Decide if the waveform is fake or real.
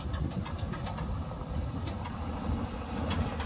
real